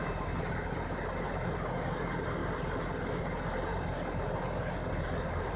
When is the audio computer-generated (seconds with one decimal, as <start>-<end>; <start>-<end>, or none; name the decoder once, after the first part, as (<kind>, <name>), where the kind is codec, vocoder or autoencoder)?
none